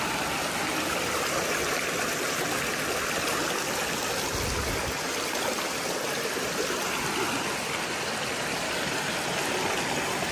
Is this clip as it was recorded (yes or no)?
yes